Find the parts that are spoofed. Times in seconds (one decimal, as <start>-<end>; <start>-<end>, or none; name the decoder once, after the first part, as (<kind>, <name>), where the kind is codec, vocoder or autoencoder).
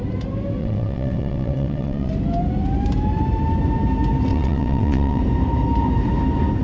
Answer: 0.6-2.1 (vocoder, WaveNeXt); 4.3-5.2